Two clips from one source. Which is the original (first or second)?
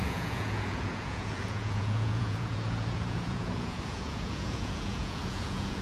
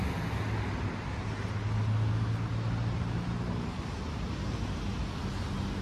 second